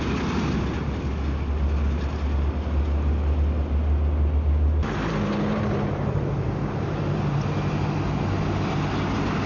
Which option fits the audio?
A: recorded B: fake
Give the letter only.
A